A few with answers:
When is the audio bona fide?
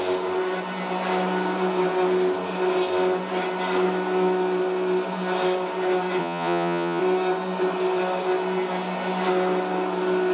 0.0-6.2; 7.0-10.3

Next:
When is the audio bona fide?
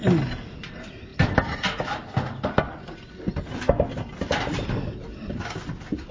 0.0-6.1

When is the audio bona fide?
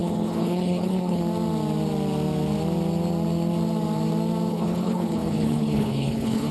1.2-4.5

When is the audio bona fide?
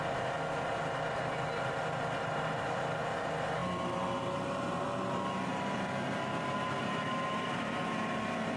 0.0-8.6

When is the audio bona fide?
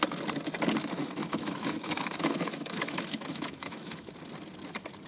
0.0-1.0; 4.1-5.1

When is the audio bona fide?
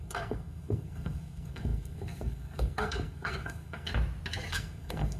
3.9-4.5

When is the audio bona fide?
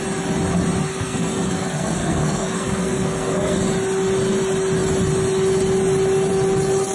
0.0-0.9; 3.6-6.9